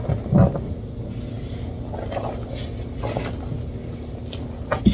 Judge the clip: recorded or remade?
recorded